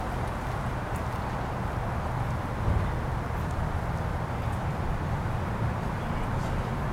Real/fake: real